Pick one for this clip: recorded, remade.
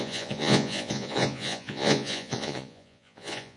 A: remade